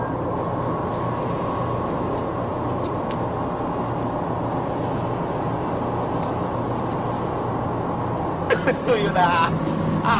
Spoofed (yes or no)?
no